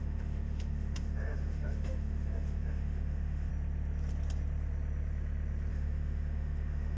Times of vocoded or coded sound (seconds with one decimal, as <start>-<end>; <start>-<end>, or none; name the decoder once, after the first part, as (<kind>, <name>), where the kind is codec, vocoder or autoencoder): 0.0-3.5 (autoencoder, DAC-VAE); 5.7-7.0